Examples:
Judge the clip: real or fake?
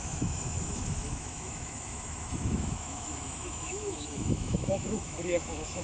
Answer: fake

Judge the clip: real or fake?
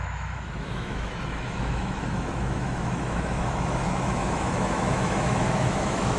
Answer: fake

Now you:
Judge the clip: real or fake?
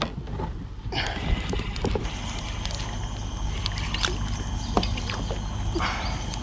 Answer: real